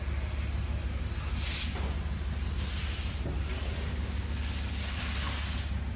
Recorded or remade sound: recorded